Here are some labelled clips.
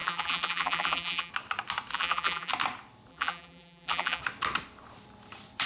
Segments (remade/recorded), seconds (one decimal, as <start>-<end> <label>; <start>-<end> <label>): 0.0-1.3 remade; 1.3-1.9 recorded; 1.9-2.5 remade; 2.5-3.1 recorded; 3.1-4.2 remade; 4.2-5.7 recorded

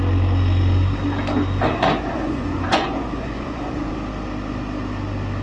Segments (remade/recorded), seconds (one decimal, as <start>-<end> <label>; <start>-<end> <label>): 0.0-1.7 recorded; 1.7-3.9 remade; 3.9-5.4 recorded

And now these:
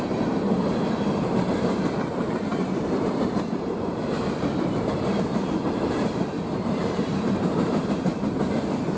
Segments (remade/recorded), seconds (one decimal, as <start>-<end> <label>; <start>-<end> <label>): 0.0-8.1 remade; 8.1-9.0 recorded